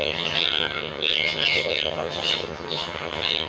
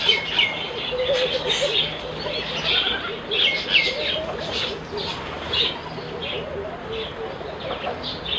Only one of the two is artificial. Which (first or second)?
first